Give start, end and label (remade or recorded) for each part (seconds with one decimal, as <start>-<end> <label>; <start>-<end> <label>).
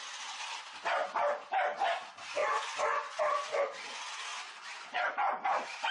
0.0-2.4 recorded; 2.4-3.2 remade; 3.2-4.3 recorded; 4.3-5.1 remade; 5.1-5.9 recorded